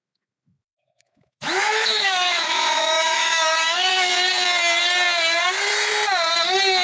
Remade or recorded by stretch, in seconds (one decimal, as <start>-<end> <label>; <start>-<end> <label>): 0.0-4.1 remade; 4.1-6.8 recorded